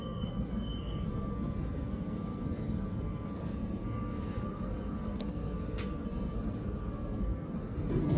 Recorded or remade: remade